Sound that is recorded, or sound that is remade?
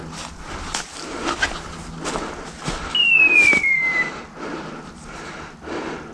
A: recorded